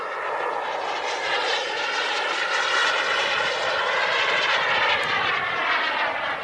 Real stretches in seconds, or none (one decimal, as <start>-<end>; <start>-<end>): 0.0-1.5; 3.6-6.4